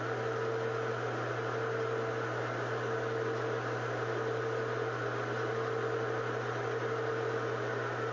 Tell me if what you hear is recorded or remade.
recorded